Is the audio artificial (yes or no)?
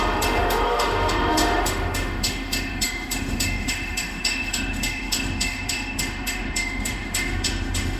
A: yes